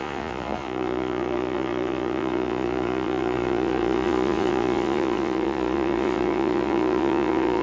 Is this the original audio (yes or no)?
no